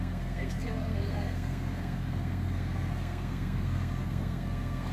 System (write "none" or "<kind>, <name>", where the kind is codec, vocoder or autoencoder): codec, SNAC